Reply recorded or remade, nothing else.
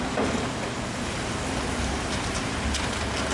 recorded